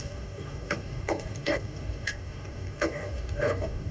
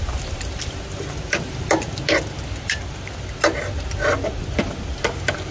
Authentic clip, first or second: second